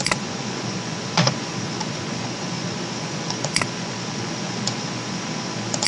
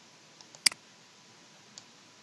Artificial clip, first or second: first